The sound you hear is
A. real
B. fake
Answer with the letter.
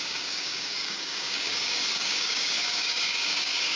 B